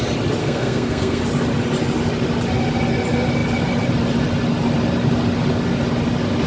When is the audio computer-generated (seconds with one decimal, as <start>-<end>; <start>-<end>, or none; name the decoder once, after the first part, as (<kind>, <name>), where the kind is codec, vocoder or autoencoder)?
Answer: 0.4-1.2 (codec, SNAC)